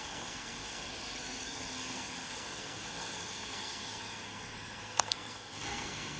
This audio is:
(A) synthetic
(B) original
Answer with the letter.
A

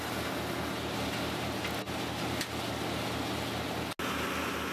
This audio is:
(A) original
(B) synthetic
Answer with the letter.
A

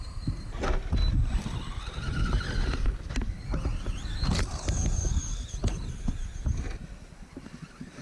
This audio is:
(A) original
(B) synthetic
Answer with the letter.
A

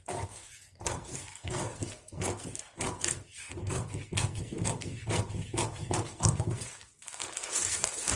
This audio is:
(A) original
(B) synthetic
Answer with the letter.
B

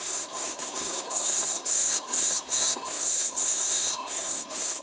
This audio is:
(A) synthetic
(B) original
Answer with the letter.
A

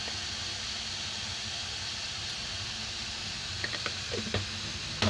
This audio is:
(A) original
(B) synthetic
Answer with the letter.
A